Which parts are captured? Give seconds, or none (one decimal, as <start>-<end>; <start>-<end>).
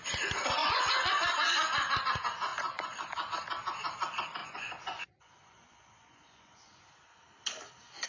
0.0-0.6; 1.9-2.5; 3.3-4.4; 6.8-8.1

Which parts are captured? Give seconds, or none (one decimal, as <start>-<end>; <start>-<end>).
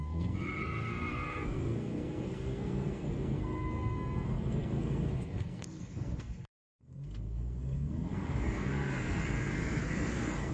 none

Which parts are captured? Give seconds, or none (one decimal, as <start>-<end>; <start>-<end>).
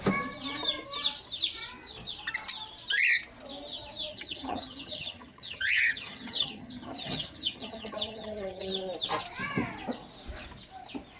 0.0-4.1; 8.7-11.2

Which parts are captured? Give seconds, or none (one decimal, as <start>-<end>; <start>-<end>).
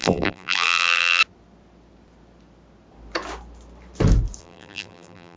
1.2-4.4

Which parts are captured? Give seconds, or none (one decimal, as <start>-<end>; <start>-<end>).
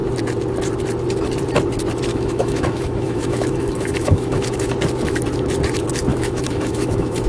0.0-2.1; 4.7-6.1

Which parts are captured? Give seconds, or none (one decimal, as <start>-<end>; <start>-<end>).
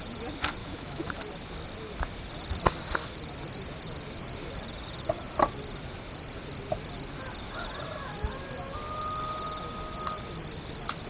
0.0-0.6; 1.1-11.1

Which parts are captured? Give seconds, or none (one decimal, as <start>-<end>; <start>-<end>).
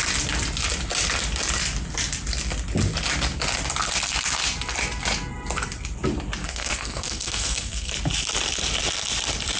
0.0-6.4; 7.9-9.6